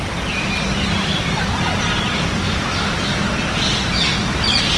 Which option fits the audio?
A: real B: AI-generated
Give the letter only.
A